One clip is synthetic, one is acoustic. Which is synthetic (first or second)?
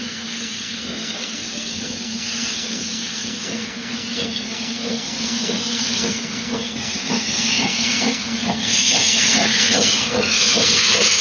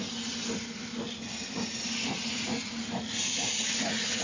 first